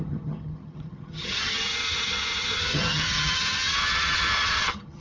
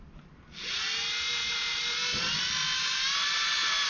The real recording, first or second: second